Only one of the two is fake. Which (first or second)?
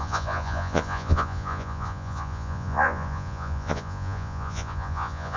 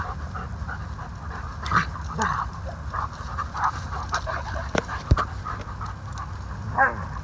first